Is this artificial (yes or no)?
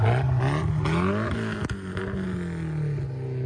no